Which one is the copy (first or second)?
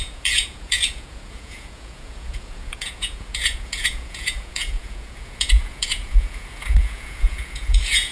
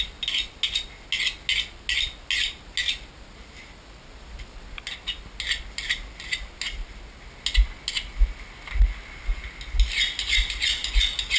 first